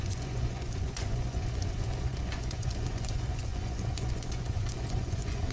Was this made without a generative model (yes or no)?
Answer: no